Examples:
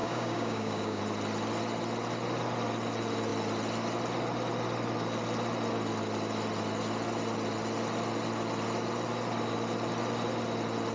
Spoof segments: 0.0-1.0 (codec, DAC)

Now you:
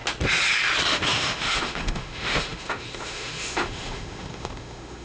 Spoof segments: 0.9-5.0 (autoencoder, DAC-VAE)

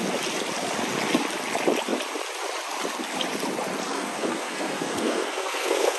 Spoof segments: 3.9-6.0 (codec, SNAC)

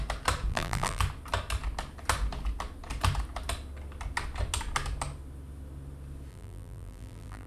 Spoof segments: 0.5-1.0 (vocoder, BigVGAN v2); 6.3-7.5

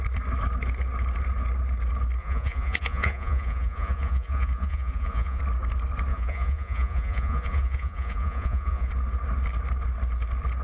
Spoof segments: 2.2-5.4 (vocoder, Vocos); 6.1-8.9